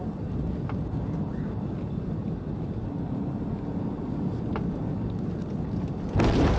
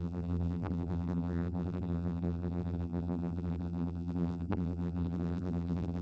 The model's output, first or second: second